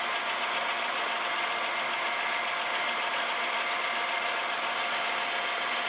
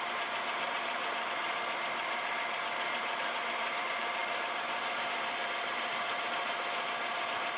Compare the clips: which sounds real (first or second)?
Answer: first